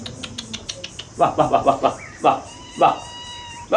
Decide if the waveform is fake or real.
real